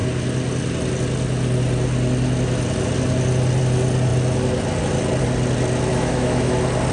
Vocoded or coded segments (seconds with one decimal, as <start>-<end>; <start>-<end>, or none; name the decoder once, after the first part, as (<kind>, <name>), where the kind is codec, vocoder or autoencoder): 5.9-6.5 (autoencoder, DAC-VAE)